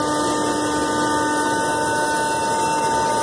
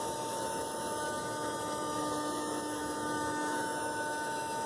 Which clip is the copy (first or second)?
second